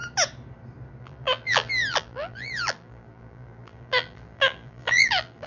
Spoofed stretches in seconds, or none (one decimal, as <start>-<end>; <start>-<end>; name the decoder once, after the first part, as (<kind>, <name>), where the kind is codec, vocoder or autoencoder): 1.0-5.5 (vocoder, BigVGAN v2)